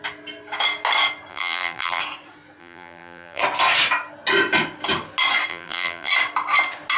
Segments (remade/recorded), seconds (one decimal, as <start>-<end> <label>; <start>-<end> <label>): 0.0-1.3 recorded; 1.3-2.0 remade; 2.0-2.6 recorded; 2.6-3.4 remade; 3.4-5.5 recorded; 5.5-6.1 remade; 6.1-7.0 recorded